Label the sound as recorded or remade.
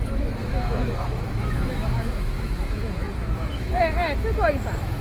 remade